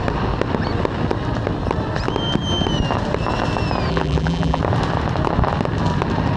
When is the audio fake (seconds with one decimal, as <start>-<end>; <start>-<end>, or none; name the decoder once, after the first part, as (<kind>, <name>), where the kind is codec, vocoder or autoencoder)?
3.9-4.6 (vocoder, BigVGAN v2)